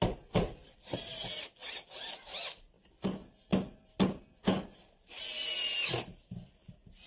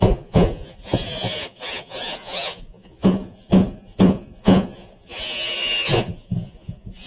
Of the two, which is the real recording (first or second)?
first